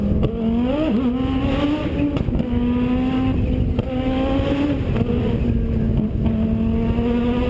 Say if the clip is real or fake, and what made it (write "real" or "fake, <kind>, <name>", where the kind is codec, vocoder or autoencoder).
real